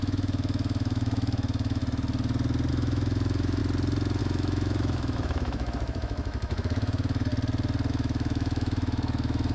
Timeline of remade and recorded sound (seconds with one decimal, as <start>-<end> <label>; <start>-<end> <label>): 0.0-1.8 remade; 1.8-2.7 recorded; 2.7-3.6 remade; 3.6-4.2 recorded; 4.2-7.3 remade; 7.3-7.9 recorded; 7.9-9.5 remade